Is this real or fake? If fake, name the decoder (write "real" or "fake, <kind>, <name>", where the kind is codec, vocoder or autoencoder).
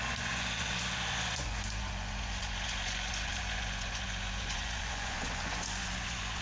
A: fake, vocoder, Vocos